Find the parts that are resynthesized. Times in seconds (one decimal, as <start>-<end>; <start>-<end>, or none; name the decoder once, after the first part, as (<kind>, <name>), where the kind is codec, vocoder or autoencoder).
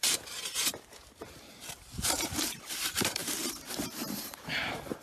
0.0-5.0 (vocoder, BigVGAN v2)